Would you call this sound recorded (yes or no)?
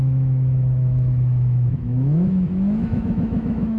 no